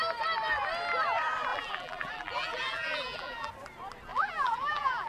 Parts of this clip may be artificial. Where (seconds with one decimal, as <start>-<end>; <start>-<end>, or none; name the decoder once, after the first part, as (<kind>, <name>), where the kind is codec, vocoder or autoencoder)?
1.5-3.5 (vocoder, BigVGAN v2); 4.1-5.1

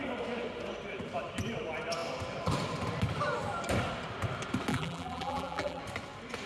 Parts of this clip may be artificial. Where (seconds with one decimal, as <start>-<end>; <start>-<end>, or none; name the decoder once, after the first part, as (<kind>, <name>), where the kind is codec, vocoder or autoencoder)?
4.7-5.8 (vocoder, BigVGAN v2)

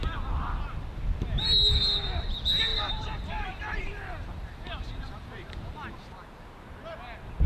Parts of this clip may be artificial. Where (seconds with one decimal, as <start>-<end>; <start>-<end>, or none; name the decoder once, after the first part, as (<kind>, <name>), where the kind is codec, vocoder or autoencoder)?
2.7-5.9 (vocoder, BigVGAN v2)

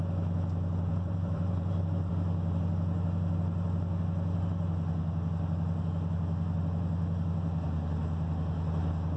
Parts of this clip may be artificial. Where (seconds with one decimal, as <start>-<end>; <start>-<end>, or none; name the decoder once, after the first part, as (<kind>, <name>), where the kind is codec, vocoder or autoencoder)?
0.9-2.1 (vocoder, BigVGAN v2)

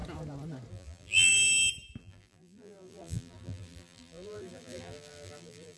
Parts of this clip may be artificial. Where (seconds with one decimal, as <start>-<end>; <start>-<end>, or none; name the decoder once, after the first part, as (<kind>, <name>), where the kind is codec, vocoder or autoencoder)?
0.7-1.3 (vocoder, BigVGAN v2); 2.0-5.8

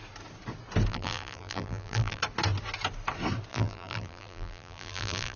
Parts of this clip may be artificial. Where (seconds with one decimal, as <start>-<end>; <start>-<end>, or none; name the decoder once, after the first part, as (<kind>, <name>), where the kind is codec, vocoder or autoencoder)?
0.9-2.2 (vocoder, BigVGAN v2); 3.5-5.4

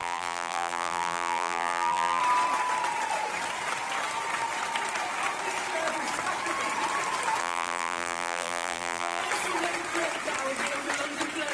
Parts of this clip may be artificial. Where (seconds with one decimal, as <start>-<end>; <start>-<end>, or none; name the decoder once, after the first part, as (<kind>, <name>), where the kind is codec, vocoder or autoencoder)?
0.0-2.2 (vocoder, BigVGAN v2); 7.4-9.2

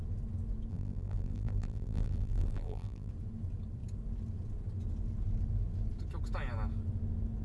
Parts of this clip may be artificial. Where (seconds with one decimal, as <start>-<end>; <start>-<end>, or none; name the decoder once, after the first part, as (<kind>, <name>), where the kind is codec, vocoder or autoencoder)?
0.7-3.1 (vocoder, BigVGAN v2)